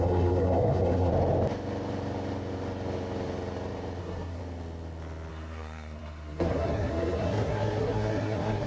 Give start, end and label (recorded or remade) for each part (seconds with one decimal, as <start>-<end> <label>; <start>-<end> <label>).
0.0-1.1 remade; 1.1-4.0 recorded; 4.0-4.4 remade; 4.4-5.3 recorded; 5.3-8.7 remade

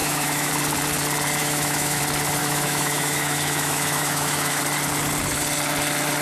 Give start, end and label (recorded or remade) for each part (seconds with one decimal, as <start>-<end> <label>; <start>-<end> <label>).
0.0-0.5 remade; 0.5-1.4 recorded; 1.4-2.0 remade; 2.0-2.4 recorded; 2.4-4.6 remade; 4.6-6.2 recorded

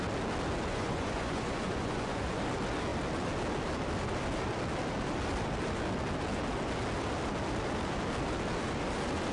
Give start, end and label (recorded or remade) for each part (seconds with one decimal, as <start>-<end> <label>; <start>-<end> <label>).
0.0-0.7 recorded; 0.7-2.4 remade; 2.4-9.3 recorded

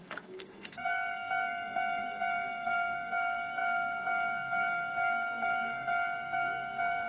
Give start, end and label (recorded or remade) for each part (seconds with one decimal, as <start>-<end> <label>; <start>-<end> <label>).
0.0-7.1 remade

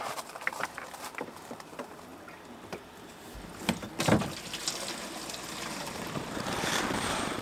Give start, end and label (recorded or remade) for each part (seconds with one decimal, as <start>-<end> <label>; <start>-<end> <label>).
0.0-2.1 remade; 2.1-5.5 recorded; 5.5-7.4 remade

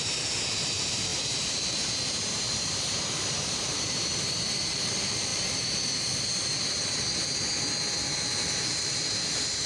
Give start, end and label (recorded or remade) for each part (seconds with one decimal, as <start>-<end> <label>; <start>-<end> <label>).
0.0-5.3 remade; 5.3-8.7 recorded; 8.7-9.7 remade